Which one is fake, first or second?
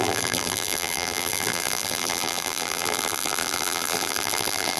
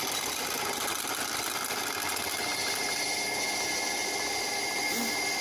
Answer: first